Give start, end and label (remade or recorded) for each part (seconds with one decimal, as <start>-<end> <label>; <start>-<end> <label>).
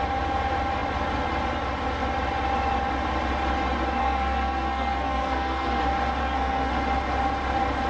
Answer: 0.0-4.0 recorded; 4.0-5.8 remade; 5.8-6.2 recorded; 6.2-6.7 remade; 6.7-7.9 recorded